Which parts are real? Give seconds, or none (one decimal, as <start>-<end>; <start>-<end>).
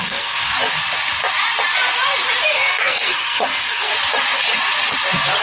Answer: 0.5-2.5; 3.9-5.4